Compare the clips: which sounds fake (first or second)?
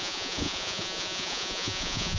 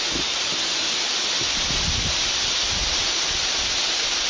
first